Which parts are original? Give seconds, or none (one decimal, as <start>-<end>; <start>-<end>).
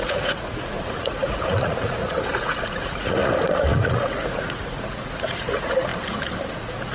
5.9-6.5